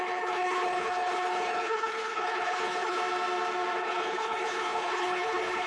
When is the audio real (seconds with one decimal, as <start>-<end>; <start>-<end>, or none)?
3.0-3.8

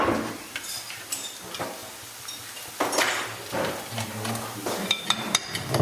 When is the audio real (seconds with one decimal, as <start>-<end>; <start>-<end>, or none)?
0.0-5.8